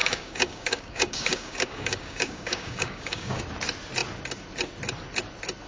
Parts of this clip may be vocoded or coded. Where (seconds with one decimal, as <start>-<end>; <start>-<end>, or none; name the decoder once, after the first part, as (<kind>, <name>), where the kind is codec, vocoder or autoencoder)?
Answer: 0.0-3.4 (codec, DAC)